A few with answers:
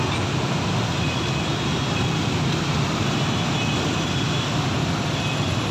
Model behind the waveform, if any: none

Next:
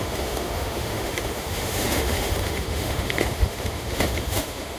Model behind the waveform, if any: autoencoder, DAC-VAE